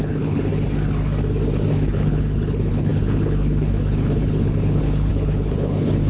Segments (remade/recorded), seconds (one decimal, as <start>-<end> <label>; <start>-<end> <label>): 0.0-0.5 remade; 0.5-1.7 recorded; 1.7-6.1 remade